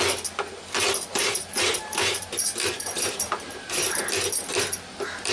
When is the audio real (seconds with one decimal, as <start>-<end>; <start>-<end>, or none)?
0.0-1.1; 4.0-5.3